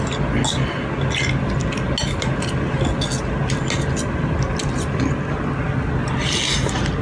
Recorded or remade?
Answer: recorded